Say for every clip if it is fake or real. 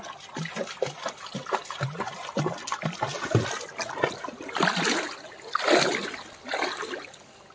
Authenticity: real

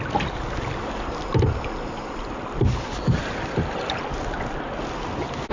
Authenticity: real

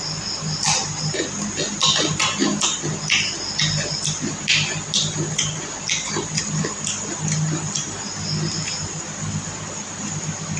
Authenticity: real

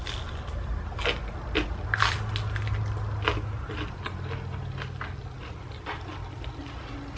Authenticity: real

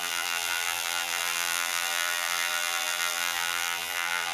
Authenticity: fake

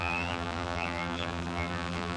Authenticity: fake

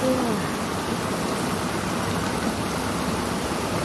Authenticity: real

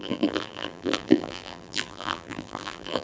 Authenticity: fake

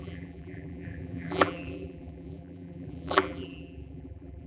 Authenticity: fake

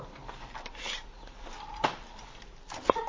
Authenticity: fake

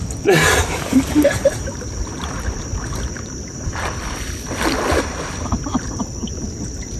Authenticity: real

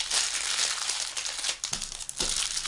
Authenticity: real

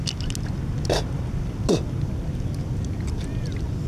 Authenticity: real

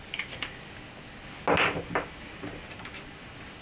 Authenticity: real